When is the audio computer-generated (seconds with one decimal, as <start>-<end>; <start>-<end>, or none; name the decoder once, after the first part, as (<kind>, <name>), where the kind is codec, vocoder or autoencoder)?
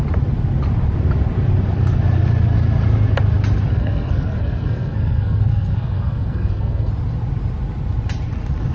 3.7-6.9 (codec, SNAC)